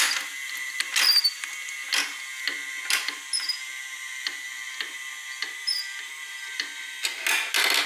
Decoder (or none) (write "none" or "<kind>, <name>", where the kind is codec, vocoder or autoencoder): none